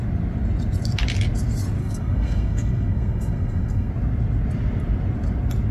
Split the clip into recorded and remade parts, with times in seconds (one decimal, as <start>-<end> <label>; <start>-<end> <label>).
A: 0.0-1.8 recorded; 1.8-3.9 remade; 3.9-5.7 recorded